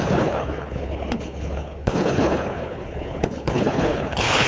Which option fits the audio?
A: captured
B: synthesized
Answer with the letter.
B